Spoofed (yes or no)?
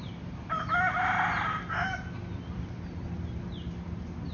no